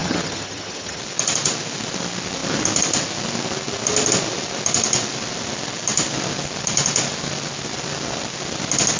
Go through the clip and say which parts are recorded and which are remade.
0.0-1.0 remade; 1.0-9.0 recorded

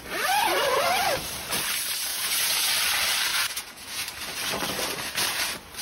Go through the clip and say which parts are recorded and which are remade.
0.0-2.1 recorded; 2.1-2.7 remade; 2.7-3.3 recorded; 3.3-4.0 remade; 4.0-5.8 recorded